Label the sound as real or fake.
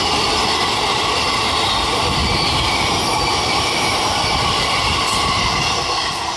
fake